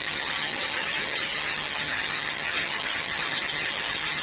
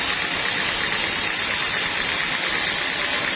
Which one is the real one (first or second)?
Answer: second